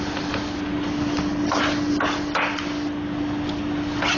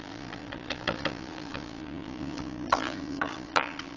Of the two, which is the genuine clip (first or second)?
first